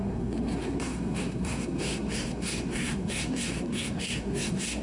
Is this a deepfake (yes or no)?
yes